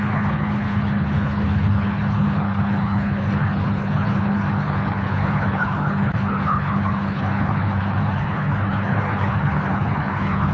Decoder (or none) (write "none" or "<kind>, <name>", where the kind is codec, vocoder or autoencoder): codec, HILCodec